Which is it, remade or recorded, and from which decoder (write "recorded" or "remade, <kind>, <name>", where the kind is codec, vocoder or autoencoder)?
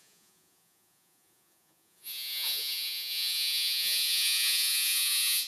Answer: remade, vocoder, Vocos